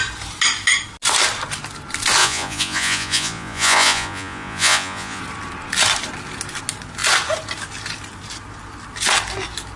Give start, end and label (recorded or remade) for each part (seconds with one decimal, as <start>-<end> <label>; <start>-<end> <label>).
0.0-2.2 recorded; 2.2-5.2 remade; 5.2-9.8 recorded